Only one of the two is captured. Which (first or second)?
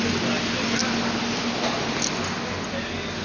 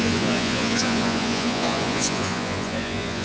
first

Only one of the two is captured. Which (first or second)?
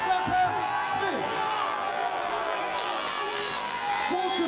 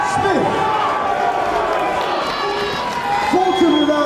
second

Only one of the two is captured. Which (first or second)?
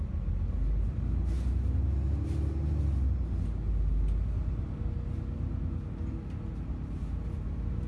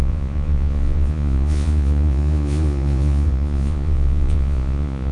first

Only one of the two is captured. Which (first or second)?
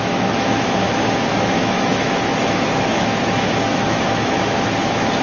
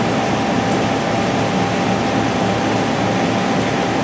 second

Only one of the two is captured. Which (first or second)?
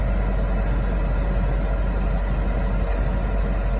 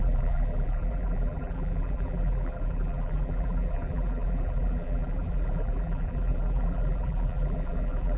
first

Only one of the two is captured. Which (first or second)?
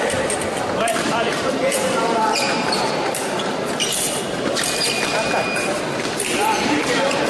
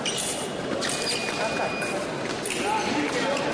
second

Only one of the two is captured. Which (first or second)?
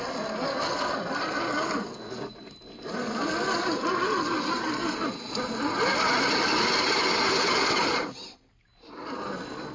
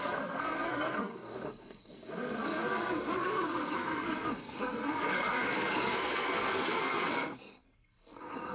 first